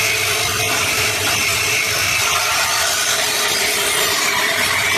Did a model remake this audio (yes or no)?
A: no